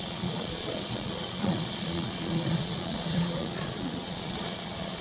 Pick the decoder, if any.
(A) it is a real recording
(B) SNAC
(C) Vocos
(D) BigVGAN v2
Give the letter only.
C